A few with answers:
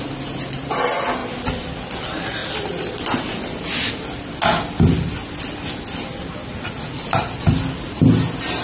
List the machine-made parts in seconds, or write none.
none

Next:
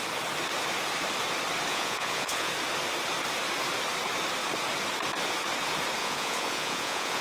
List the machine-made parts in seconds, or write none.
1.7-2.5 (vocoder, Vocos); 6.0-7.2